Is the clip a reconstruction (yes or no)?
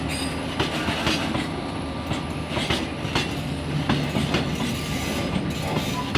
no